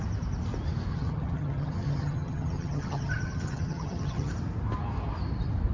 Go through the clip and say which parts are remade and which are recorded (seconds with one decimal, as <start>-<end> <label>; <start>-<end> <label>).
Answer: 0.0-0.9 recorded; 0.9-4.3 remade; 4.3-5.7 recorded